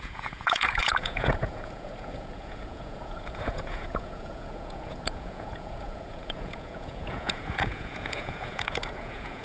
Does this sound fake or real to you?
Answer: fake